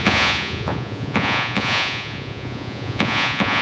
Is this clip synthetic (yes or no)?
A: yes